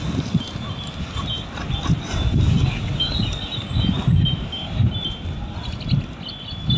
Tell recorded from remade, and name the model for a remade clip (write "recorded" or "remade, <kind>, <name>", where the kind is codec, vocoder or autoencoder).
recorded